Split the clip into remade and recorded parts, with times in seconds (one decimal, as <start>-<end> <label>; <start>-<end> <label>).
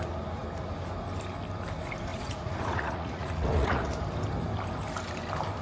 0.0-2.1 recorded; 2.1-3.9 remade; 3.9-5.6 recorded